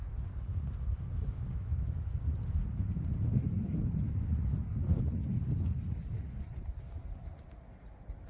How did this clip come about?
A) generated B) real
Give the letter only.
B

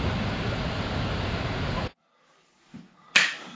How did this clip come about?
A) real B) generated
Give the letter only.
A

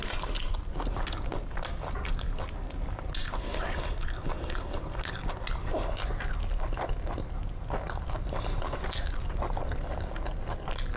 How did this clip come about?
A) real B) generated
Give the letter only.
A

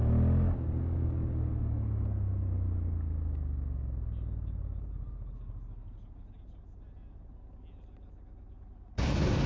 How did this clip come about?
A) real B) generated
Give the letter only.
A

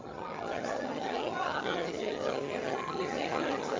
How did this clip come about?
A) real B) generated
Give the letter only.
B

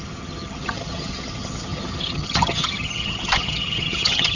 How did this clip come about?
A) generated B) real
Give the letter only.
A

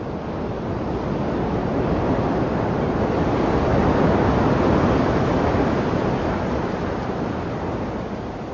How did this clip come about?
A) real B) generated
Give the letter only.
A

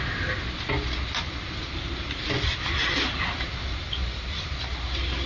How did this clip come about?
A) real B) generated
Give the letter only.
A